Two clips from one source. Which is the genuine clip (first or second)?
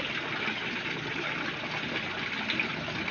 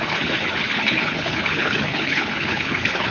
first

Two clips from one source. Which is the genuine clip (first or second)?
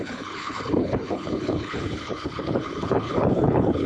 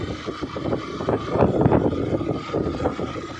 second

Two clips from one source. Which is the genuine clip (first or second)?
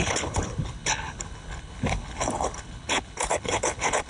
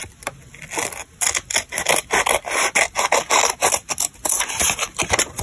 second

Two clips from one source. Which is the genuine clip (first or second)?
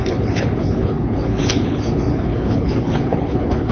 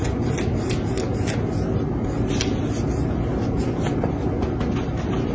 second